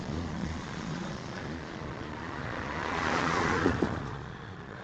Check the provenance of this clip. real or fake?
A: fake